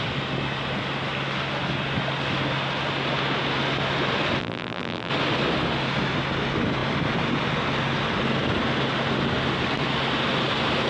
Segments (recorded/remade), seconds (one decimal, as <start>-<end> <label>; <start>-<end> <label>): 0.0-4.4 recorded; 4.4-5.1 remade; 5.1-10.9 recorded